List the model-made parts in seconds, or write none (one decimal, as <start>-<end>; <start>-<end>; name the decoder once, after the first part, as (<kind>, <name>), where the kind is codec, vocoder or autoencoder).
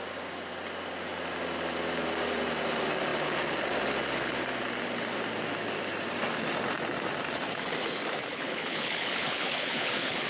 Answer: 8.3-10.3 (codec, HILCodec)